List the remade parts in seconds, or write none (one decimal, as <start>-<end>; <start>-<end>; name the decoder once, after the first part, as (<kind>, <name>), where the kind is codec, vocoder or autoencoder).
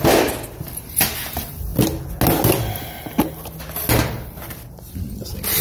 none